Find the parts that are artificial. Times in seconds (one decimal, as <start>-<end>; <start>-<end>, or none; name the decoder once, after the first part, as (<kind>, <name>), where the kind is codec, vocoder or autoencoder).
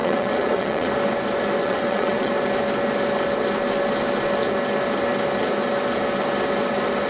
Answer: 0.0-0.9 (vocoder, WaveNeXt); 1.6-2.3